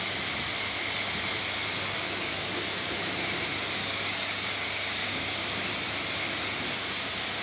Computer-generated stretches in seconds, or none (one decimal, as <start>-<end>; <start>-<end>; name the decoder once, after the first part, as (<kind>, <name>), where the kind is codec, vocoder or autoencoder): 1.7-2.6 (codec, DAC); 3.8-4.5; 5.0-5.7